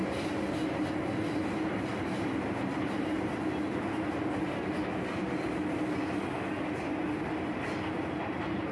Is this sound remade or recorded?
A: recorded